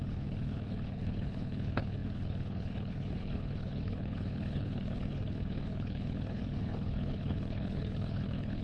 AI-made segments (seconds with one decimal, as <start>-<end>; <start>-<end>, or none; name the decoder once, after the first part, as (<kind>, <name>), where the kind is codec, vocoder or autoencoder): 0.0-8.6 (codec, HILCodec)